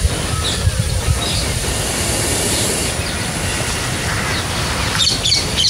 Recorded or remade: remade